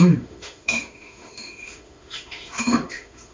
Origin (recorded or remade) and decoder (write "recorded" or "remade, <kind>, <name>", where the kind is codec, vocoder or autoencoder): remade, autoencoder, DAC-VAE